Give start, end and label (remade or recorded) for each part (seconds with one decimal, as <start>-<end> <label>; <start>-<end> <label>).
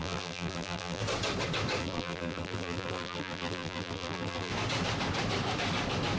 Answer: 0.0-1.0 remade; 1.0-1.8 recorded; 1.8-4.5 remade; 4.5-6.2 recorded